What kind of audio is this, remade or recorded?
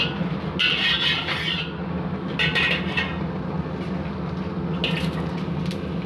recorded